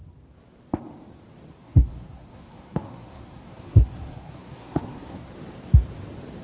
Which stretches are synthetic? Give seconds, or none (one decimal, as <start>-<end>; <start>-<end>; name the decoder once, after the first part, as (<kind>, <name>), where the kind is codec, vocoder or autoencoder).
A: 1.5-5.3 (codec, SNAC)

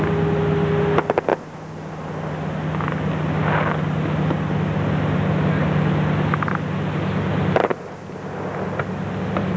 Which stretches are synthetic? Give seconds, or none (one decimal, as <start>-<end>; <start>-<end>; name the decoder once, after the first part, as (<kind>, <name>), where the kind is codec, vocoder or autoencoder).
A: none

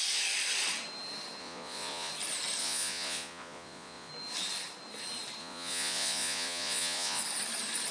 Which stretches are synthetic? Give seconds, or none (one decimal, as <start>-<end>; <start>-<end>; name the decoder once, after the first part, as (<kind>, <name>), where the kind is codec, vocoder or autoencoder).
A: 1.4-2.1 (vocoder, Vocos); 2.6-4.1; 5.4-7.2

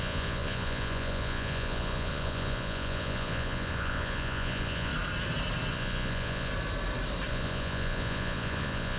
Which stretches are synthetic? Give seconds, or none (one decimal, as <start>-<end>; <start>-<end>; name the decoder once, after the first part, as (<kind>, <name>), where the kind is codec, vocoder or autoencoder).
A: 0.0-4.9 (vocoder, Vocos); 5.7-6.5; 7.3-9.0

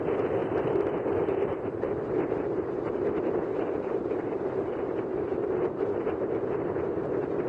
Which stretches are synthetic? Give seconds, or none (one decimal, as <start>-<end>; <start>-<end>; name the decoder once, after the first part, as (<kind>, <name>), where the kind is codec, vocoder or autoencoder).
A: 0.4-0.9 (vocoder, BigVGAN v2)

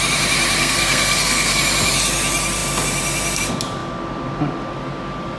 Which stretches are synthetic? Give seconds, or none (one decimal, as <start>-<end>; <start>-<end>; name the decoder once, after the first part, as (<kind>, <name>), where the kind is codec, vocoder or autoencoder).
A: 0.6-1.6 (codec, SNAC)

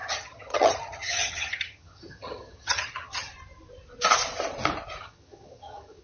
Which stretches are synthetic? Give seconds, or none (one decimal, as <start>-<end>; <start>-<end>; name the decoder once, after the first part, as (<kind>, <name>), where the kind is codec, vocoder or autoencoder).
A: 0.0-3.3 (vocoder, HiFi-GAN); 5.0-6.0

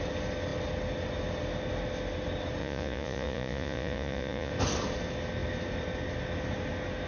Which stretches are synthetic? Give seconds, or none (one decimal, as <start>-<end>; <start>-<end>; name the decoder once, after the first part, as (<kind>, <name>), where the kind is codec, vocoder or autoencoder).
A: 2.6-4.5 (vocoder, Vocos)